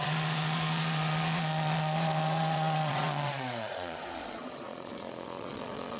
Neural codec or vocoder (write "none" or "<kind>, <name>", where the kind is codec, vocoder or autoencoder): vocoder, Vocos